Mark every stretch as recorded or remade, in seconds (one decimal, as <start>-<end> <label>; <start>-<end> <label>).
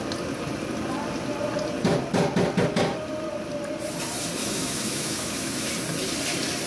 0.0-4.4 recorded; 4.4-5.7 remade; 5.7-6.7 recorded